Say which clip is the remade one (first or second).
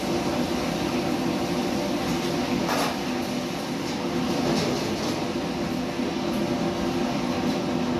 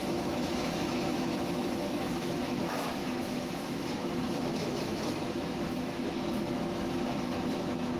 second